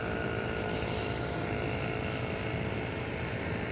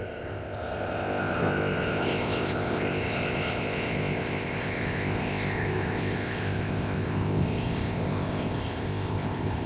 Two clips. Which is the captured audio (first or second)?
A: first